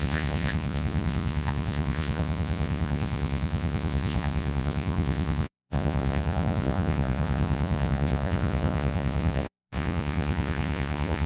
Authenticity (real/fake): fake